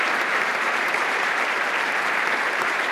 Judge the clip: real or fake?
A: fake